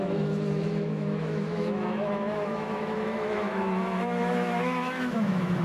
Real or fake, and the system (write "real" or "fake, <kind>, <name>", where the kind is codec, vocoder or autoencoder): fake, autoencoder, DAC-VAE